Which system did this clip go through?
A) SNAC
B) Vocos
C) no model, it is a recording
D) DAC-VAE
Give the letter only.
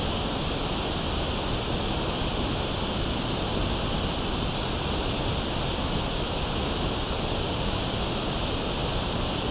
C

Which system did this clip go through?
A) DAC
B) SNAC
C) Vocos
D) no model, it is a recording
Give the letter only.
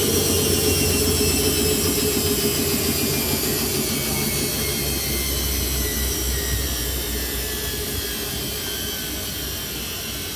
D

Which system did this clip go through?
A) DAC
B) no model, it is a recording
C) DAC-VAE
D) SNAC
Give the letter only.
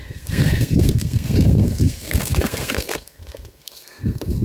D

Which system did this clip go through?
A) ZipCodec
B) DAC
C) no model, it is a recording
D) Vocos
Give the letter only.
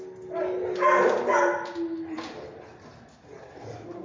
C